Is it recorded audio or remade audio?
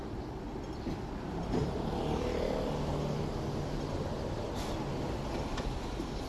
recorded